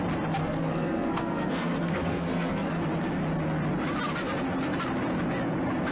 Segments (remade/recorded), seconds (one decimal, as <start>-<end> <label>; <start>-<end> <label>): 0.0-0.4 recorded; 0.4-2.7 remade; 2.7-5.9 recorded